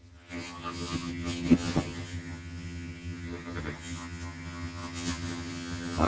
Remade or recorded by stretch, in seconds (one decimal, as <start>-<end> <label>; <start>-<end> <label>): 0.0-6.1 remade